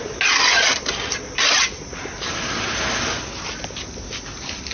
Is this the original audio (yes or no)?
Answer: yes